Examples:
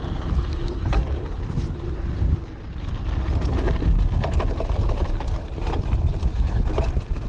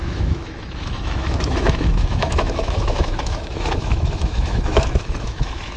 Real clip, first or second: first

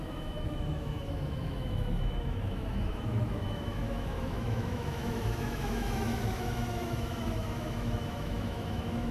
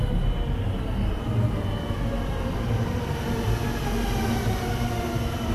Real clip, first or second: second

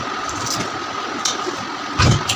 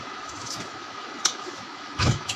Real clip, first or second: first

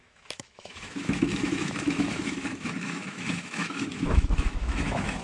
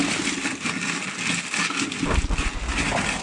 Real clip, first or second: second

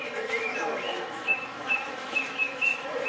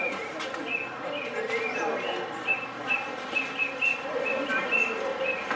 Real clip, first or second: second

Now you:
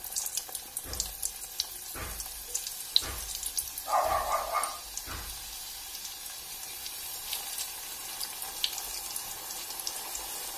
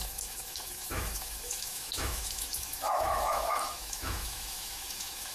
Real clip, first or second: first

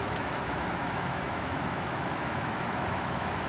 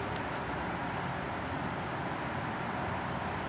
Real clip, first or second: second